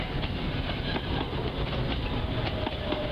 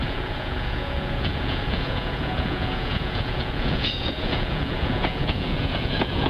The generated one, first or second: second